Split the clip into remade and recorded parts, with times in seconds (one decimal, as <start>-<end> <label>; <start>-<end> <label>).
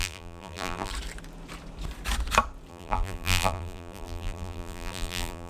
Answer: 0.0-0.9 remade; 0.9-2.7 recorded; 2.7-5.5 remade